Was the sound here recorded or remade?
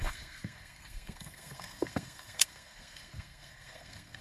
remade